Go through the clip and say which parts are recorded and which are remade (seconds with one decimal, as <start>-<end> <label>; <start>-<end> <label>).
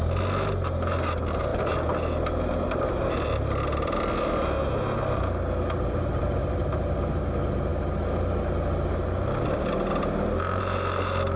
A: 0.0-11.4 recorded